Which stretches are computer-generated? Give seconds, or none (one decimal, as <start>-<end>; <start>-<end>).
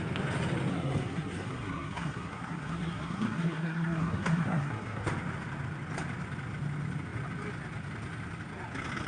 0.7-5.1